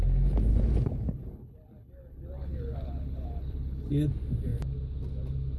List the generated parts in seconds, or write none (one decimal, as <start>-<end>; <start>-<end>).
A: 0.5-3.9